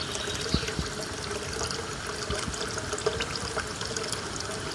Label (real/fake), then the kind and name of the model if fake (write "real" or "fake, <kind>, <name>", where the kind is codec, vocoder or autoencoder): real